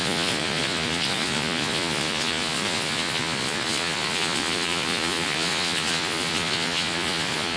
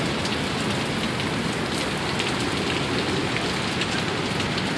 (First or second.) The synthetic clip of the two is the first